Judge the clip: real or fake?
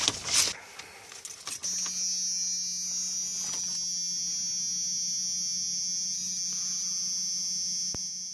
real